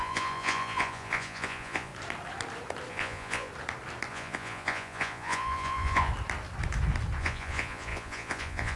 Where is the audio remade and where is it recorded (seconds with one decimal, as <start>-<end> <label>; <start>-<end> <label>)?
0.0-1.9 remade; 1.9-2.9 recorded; 2.9-3.5 remade; 3.5-4.1 recorded; 4.1-6.1 remade; 6.1-7.2 recorded; 7.2-8.8 remade